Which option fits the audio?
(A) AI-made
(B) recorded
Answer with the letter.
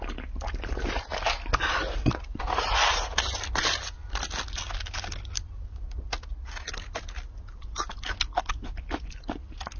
B